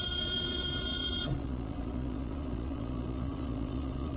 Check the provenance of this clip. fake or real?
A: fake